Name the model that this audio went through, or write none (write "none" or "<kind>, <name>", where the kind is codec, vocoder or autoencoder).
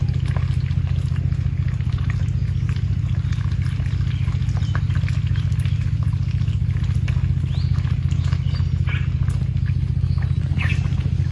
none